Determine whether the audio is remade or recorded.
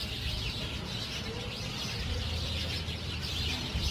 recorded